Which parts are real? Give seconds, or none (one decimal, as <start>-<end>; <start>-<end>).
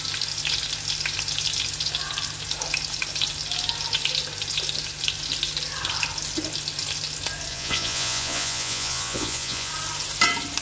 0.0-7.5; 9.7-10.6